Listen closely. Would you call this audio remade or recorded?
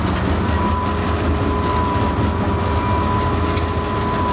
recorded